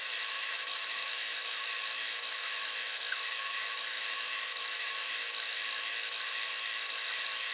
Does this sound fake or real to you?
fake